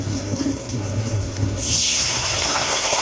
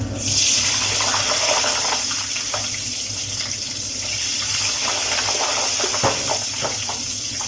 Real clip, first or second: second